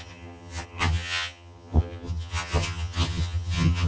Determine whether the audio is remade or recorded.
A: remade